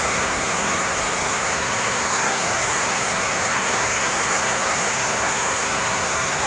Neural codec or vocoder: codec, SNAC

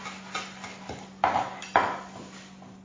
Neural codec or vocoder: none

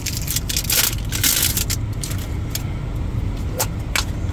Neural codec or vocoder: none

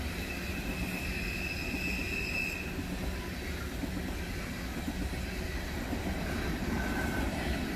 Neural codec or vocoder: none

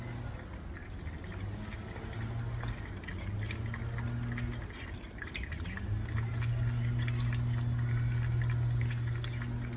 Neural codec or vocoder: none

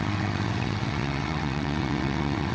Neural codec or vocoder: vocoder, WaveNeXt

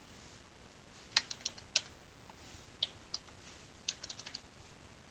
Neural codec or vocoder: none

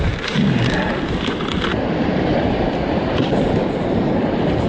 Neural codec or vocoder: none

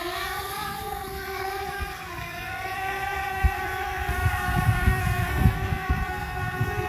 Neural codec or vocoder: codec, SNAC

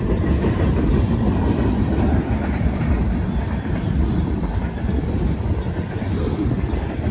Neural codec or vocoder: vocoder, BigVGAN v2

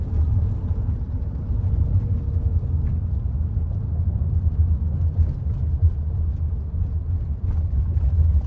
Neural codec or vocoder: none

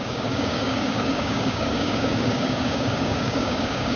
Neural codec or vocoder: codec, DAC